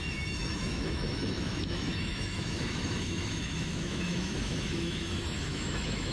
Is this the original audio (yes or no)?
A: no